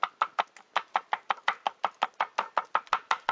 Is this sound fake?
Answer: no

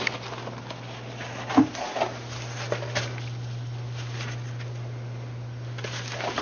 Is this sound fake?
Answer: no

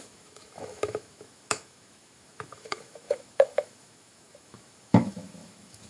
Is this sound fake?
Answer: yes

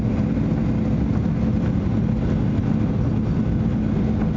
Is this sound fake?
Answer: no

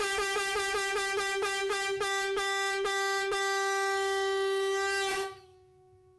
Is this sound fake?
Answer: yes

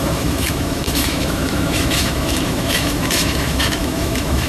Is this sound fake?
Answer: yes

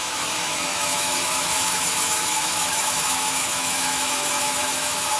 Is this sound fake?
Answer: yes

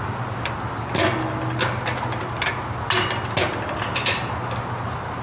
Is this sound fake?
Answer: no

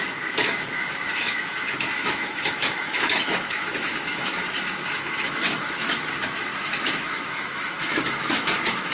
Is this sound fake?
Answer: yes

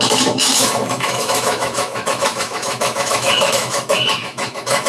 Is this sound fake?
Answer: yes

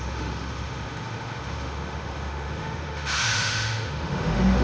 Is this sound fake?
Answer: yes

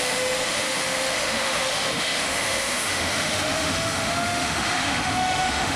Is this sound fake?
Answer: yes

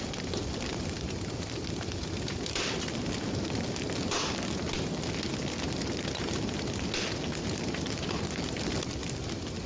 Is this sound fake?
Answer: no